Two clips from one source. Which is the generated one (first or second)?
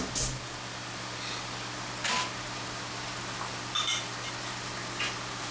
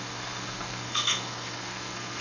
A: second